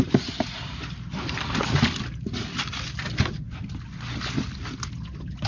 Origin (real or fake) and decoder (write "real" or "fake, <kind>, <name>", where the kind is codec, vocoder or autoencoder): real